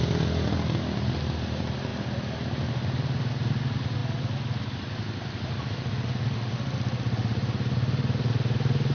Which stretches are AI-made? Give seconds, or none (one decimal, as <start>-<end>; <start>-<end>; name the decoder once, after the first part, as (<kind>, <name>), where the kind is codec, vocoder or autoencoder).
none